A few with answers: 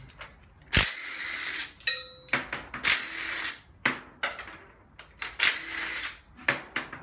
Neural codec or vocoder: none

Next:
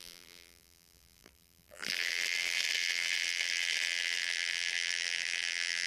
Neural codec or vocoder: vocoder, BigVGAN v2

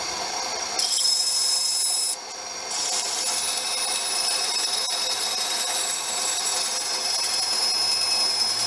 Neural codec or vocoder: none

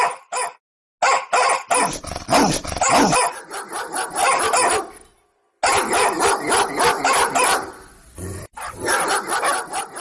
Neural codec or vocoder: none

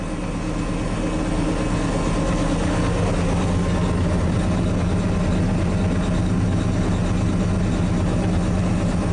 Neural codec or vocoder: none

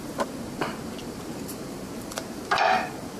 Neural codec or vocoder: vocoder, BigVGAN v2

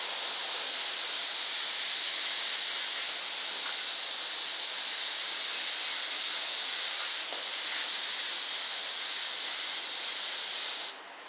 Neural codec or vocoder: none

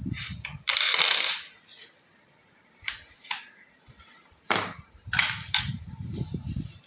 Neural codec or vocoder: vocoder, BigVGAN v2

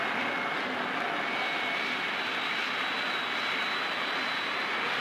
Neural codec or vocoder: vocoder, BigVGAN v2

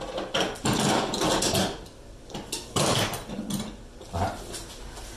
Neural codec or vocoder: none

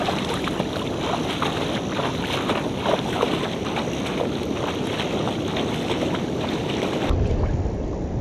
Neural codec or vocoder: none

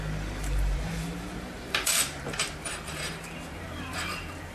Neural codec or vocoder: vocoder, BigVGAN v2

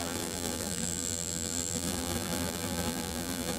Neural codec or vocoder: vocoder, BigVGAN v2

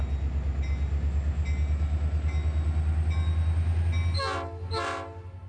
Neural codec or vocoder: none